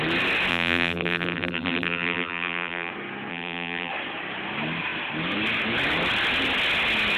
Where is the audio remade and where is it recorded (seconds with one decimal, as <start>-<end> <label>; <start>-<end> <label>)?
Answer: 0.0-0.5 recorded; 0.5-2.9 remade; 2.9-3.3 recorded; 3.3-3.9 remade; 3.9-7.2 recorded